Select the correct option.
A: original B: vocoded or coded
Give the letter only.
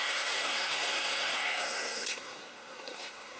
B